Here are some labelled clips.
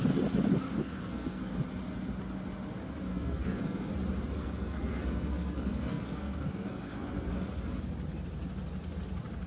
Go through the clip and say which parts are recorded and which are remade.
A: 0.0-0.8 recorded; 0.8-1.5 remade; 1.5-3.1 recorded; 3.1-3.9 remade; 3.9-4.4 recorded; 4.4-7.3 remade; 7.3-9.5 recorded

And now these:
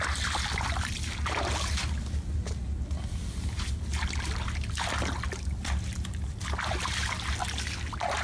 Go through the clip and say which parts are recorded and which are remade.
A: 0.0-8.2 recorded

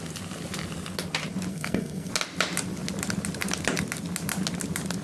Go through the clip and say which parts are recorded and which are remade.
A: 0.0-1.5 recorded; 1.5-2.1 remade; 2.1-5.0 recorded